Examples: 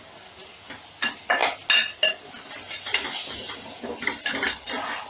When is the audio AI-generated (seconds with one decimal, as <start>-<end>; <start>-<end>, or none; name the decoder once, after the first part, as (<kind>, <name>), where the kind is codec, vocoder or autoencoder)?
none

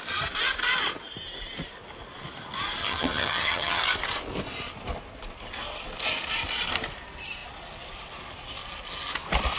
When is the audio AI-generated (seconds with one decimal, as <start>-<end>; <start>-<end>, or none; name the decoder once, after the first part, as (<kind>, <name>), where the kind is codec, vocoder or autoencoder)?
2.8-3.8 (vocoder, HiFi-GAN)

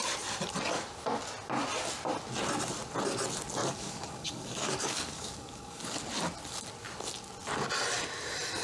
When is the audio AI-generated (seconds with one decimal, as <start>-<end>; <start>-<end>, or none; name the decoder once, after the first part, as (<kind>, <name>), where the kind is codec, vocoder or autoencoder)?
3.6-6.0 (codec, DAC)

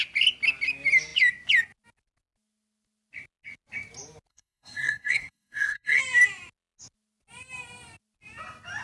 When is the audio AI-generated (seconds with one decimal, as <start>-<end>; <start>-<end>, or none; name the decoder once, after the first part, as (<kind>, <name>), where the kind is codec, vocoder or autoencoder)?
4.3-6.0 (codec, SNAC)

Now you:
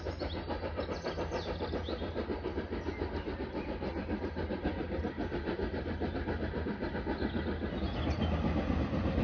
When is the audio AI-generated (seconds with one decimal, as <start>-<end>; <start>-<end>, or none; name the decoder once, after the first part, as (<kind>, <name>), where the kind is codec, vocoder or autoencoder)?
none